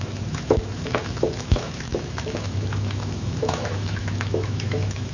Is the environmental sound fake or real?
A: fake